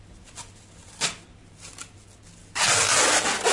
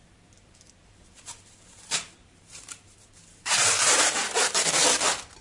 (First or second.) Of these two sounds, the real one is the first